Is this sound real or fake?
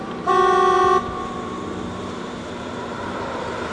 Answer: fake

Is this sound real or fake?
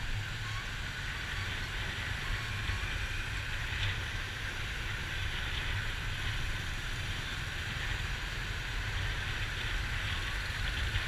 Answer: real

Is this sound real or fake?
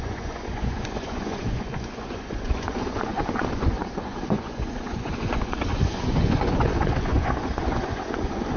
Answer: fake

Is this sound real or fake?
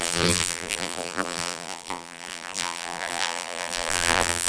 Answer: fake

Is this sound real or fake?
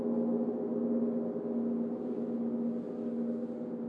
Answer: real